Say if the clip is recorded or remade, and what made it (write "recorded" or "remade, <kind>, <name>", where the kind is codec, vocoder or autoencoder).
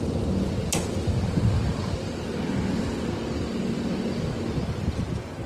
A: recorded